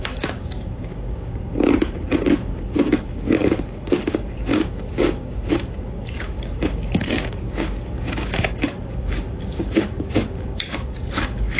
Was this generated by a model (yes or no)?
yes